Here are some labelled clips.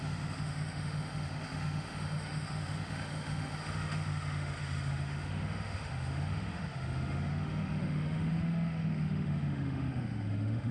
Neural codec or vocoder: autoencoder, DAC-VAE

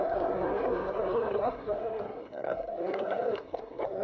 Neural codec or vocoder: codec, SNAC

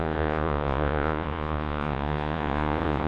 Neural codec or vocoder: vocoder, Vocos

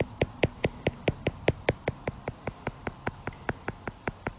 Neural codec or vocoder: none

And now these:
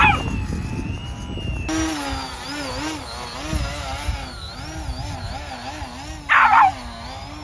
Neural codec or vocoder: none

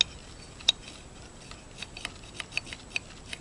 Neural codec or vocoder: none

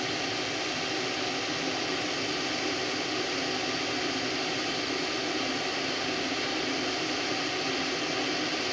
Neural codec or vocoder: none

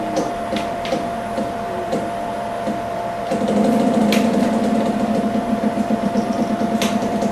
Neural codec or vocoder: vocoder, BigVGAN v2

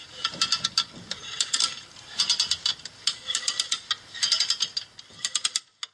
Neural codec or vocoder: none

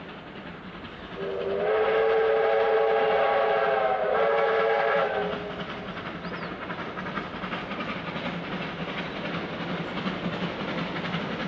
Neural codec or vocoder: none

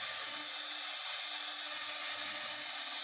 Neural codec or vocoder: none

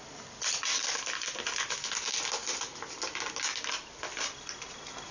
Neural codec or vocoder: none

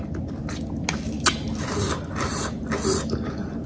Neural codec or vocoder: none